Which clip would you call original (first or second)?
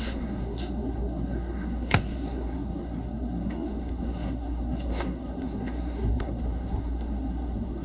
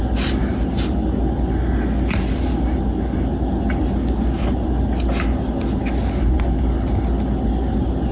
second